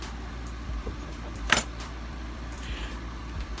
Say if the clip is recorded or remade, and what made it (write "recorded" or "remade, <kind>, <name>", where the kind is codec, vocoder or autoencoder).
remade, vocoder, BigVGAN v2